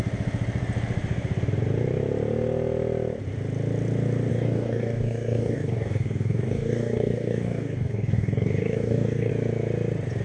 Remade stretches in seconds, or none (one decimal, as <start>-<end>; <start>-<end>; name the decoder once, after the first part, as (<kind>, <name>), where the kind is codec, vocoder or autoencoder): 4.3-9.3 (codec, DAC)

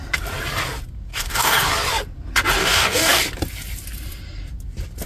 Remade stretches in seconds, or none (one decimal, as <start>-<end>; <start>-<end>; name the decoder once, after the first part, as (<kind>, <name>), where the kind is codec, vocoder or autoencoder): 1.1-1.7 (codec, DAC); 2.6-3.2

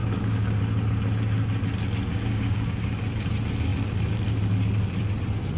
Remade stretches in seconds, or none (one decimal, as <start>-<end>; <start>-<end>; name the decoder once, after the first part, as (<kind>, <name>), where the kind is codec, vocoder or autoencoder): 0.0-0.6 (codec, DAC); 2.1-3.0

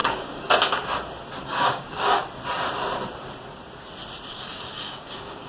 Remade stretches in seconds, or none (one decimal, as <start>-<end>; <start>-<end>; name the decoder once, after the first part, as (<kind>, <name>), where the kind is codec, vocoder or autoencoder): 0.0-0.5 (codec, DAC); 1.4-2.2; 4.3-5.5

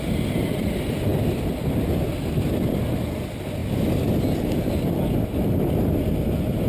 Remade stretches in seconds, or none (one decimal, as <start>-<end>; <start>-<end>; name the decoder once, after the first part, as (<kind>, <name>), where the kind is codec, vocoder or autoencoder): none

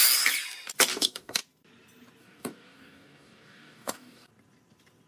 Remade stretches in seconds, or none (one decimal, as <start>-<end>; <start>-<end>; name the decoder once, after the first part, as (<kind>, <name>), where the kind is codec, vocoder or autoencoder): 0.9-1.4 (codec, DAC); 2.2-4.3

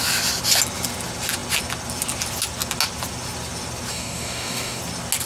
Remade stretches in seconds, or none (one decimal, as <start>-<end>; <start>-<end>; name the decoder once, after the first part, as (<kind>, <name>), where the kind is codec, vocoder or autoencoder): 3.9-4.8 (codec, DAC)